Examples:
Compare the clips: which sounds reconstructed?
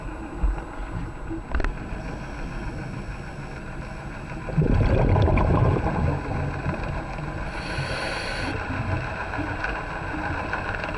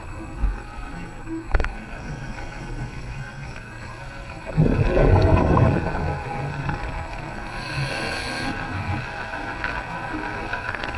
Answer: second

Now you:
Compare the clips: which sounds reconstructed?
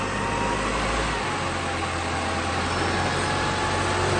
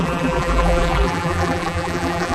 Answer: second